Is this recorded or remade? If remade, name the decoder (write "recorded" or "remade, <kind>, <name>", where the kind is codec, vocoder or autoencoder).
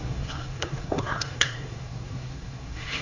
remade, codec, SNAC